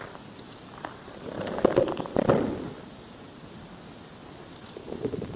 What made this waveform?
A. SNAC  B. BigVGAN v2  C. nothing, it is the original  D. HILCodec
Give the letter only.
C